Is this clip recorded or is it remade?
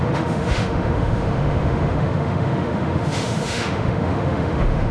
remade